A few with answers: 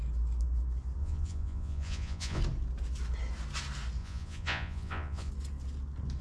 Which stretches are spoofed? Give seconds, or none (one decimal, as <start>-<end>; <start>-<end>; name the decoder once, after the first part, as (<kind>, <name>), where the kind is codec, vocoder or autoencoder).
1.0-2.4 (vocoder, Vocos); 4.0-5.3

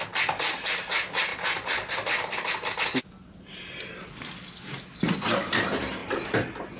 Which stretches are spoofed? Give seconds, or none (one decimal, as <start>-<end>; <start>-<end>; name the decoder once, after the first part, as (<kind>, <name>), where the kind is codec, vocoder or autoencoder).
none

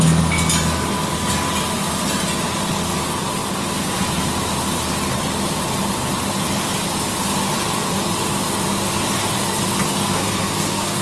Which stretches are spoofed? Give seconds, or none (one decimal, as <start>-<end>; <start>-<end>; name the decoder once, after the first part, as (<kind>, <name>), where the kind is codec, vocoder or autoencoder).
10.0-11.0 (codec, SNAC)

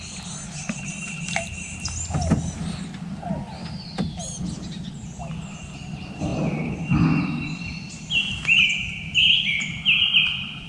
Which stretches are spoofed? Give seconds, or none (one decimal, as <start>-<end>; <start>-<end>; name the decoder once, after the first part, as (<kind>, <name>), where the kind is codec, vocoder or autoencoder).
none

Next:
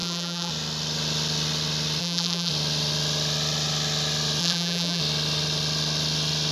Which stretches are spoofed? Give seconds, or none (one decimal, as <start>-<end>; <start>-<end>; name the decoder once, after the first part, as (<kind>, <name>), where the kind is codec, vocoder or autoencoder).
0.0-0.5 (vocoder, BigVGAN v2); 2.0-2.5; 4.4-5.0

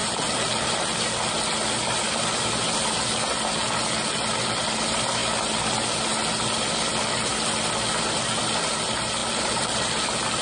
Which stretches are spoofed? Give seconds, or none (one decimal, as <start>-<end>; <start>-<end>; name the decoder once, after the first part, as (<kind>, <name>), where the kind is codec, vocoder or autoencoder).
0.0-0.7 (vocoder, BigVGAN v2); 9.2-10.4

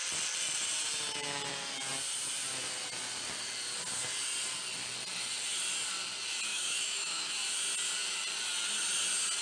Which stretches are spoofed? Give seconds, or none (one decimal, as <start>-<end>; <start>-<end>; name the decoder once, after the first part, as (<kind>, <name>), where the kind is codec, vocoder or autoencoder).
6.5-7.3 (autoencoder, DAC-VAE)